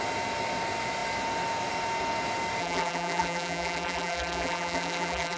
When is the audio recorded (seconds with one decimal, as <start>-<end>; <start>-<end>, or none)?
0.0-2.6